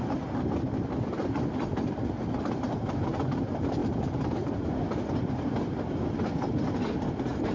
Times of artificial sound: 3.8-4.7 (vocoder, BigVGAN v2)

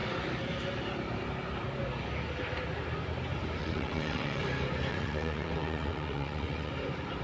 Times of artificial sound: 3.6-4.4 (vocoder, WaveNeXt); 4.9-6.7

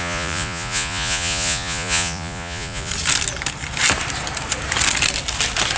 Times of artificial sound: 0.0-2.9 (vocoder, Vocos)